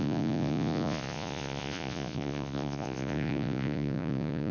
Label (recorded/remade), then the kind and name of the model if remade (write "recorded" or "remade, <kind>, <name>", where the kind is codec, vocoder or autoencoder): remade, vocoder, Vocos